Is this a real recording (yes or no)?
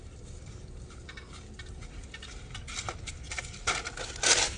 yes